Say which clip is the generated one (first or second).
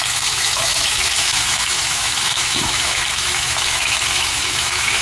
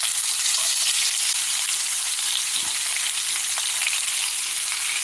first